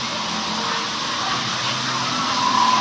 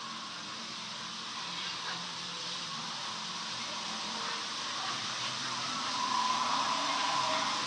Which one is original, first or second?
first